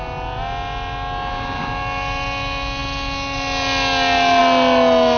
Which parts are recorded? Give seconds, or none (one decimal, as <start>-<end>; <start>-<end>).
0.0-5.2